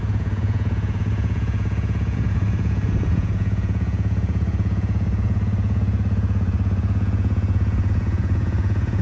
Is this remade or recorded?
remade